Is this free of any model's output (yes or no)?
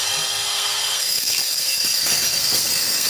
no